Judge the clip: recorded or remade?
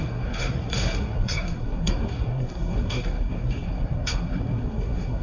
remade